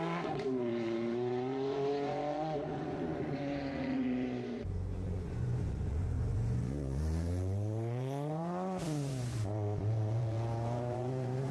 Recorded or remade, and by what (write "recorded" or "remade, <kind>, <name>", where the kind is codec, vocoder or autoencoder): remade, vocoder, Vocos